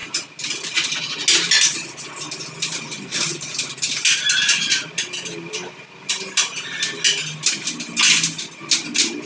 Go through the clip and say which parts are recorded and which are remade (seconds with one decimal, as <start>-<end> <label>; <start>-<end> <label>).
0.0-9.3 recorded